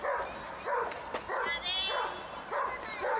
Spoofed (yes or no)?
no